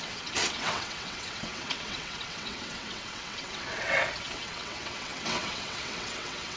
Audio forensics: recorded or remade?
remade